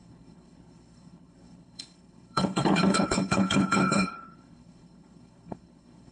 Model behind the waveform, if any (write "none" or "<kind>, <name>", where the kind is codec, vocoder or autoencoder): codec, HILCodec